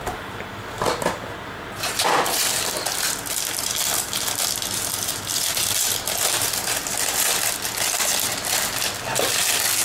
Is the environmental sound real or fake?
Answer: real